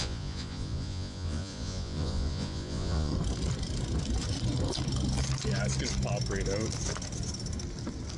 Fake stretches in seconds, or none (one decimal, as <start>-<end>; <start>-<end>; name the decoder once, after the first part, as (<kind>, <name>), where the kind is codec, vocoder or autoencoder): 0.0-3.1 (vocoder, Vocos)